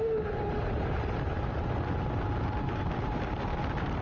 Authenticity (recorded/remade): recorded